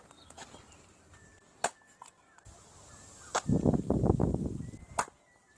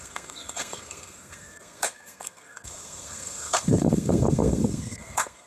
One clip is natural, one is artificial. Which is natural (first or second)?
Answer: first